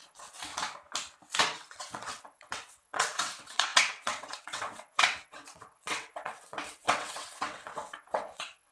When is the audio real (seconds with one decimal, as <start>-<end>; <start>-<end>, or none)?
0.5-1.4